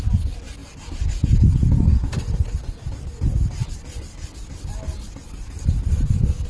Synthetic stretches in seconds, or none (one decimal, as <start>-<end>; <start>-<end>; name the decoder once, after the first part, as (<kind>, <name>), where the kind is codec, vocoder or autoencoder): none